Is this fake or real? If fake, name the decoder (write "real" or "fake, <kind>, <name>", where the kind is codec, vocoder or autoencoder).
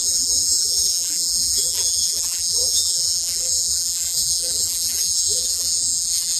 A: fake, vocoder, BigVGAN v2